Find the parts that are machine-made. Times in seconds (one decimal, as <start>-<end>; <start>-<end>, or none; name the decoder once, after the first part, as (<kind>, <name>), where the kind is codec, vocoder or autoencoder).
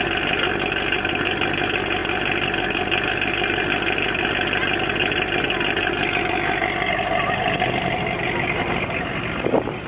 none